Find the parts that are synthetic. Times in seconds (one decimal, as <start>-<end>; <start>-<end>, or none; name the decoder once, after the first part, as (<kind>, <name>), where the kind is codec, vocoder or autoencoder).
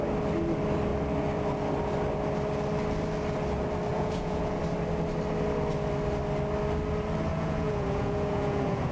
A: 3.9-4.6 (vocoder, Vocos); 7.3-8.9